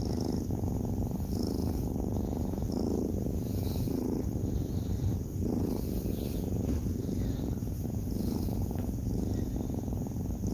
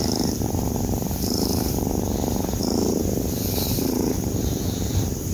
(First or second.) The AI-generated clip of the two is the second